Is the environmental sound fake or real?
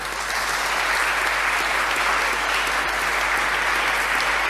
real